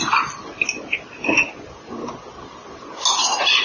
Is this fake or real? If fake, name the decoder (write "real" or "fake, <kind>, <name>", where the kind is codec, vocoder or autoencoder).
real